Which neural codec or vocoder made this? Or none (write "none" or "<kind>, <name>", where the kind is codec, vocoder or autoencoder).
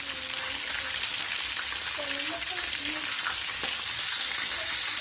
none